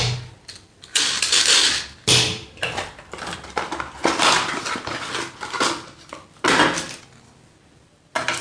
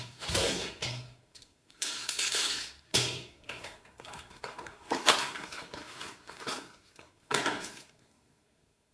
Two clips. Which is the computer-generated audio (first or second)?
second